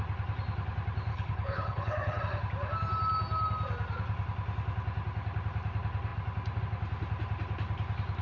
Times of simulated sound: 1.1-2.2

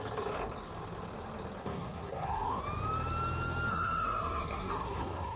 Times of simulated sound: 1.6-2.6; 3.7-5.4

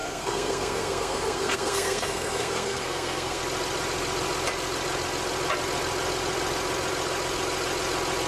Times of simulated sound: 0.0-3.4

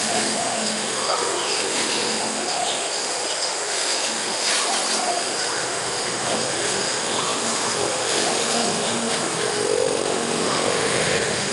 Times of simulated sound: 0.0-4.5; 5.1-11.5

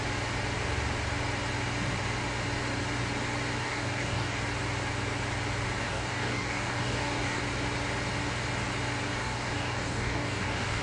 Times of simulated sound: 3.6-4.4; 5.8-7.4; 9.2-10.8